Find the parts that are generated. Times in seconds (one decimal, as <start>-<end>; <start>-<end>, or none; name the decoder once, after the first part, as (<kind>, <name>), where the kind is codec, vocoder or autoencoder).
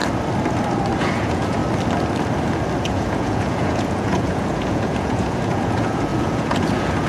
1.0-1.6 (vocoder, Vocos); 2.8-7.1